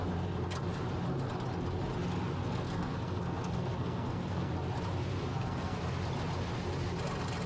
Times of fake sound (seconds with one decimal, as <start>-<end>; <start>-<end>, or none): 2.4-4.5; 5.3-5.8